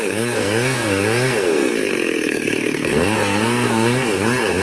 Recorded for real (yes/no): no